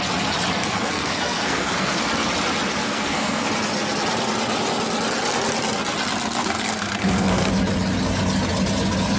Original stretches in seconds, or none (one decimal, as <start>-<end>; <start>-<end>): 0.0-0.6; 2.0-2.8; 3.5-6.4; 7.5-9.2